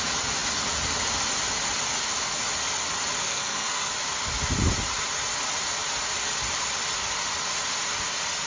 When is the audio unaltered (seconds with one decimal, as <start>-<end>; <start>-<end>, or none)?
0.0-3.2; 3.9-8.5